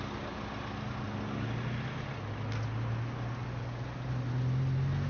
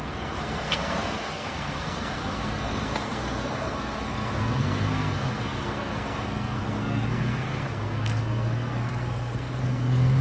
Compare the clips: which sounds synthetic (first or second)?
second